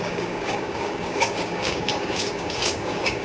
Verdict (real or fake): fake